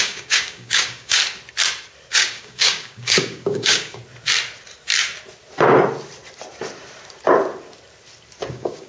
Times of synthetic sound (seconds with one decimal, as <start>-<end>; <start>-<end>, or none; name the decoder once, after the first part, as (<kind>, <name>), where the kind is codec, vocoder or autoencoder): 0.0-1.2 (codec, DAC); 2.1-4.0; 8.5-8.9